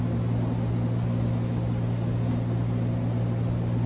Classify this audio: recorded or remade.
recorded